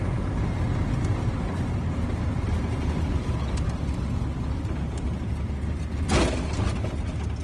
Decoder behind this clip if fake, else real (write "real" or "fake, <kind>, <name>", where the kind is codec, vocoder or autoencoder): real